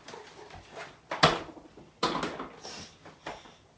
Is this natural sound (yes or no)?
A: yes